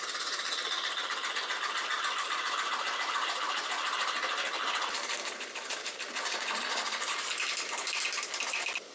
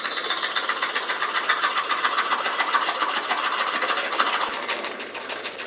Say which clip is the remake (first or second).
first